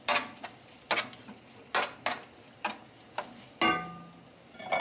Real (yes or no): yes